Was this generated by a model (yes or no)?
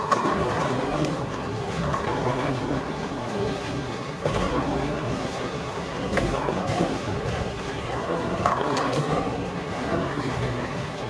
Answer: yes